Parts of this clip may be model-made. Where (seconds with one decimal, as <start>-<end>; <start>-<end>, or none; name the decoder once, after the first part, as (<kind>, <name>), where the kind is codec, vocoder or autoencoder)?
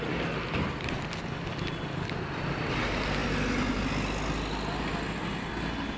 none